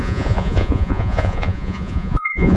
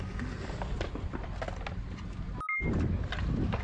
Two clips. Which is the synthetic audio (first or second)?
first